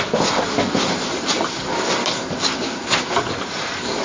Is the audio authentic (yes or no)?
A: yes